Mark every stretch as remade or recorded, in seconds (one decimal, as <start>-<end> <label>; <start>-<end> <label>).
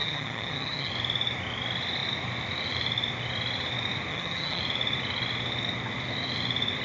0.0-0.9 remade; 0.9-4.1 recorded; 4.1-4.6 remade; 4.6-6.8 recorded